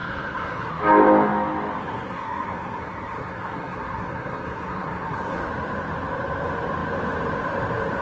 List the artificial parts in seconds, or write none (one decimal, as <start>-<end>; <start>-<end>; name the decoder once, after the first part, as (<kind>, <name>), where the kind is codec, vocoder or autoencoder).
0.0-0.7 (codec, SNAC); 1.8-5.5